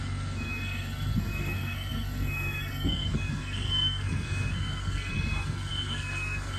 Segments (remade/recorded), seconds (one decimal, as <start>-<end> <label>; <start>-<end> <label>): 0.0-6.6 remade